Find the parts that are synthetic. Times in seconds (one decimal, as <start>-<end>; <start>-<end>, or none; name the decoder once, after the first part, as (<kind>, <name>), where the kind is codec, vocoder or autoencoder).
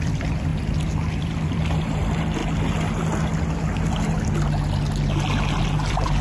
0.0-0.5 (vocoder, BigVGAN v2); 1.2-2.4; 5.6-6.2